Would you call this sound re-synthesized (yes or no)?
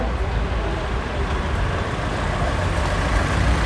no